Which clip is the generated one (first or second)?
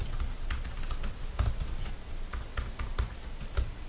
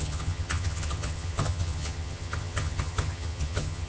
second